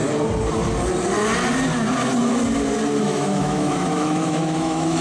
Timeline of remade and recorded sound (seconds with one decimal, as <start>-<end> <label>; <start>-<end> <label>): 0.0-3.0 recorded; 3.0-5.0 remade